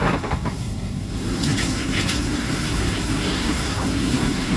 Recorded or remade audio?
remade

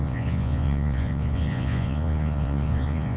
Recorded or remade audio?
remade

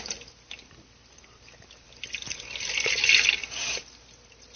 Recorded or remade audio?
recorded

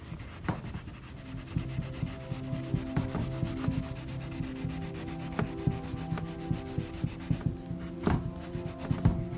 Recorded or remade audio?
recorded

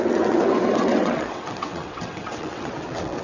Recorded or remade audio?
remade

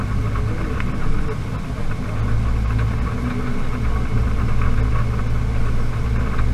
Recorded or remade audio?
recorded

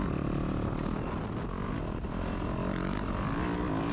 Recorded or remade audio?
recorded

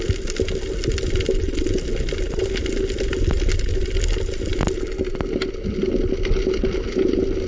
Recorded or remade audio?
recorded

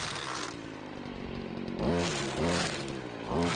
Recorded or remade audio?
recorded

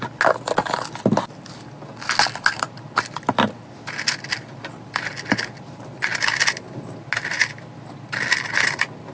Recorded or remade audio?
recorded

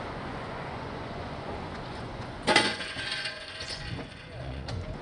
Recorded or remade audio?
remade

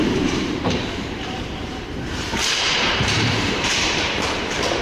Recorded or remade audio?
remade